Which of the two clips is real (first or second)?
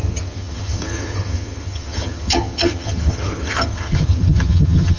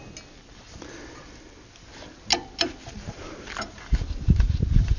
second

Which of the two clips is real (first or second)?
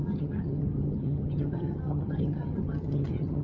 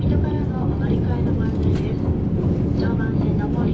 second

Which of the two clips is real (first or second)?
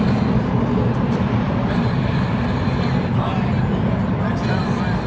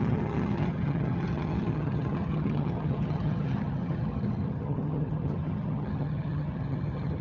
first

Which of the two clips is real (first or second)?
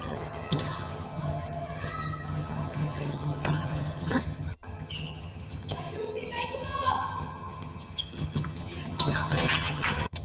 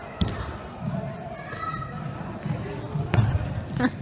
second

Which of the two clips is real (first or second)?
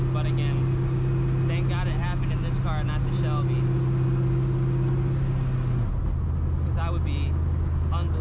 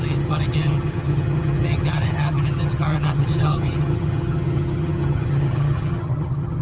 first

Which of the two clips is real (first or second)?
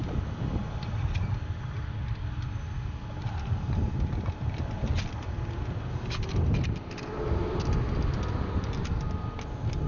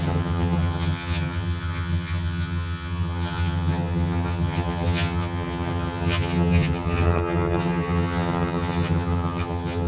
first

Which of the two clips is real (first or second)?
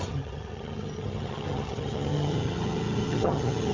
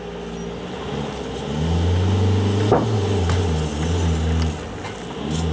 second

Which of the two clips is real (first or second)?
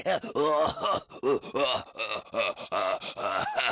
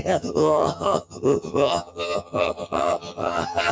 first